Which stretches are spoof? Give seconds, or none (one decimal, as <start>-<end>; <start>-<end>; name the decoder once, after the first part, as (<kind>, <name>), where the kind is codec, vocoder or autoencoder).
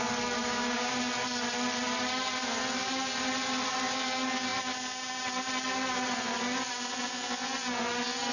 0.4-0.9 (codec, DAC)